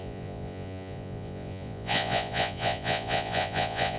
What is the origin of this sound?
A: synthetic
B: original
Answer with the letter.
A